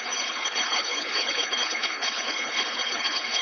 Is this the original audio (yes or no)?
no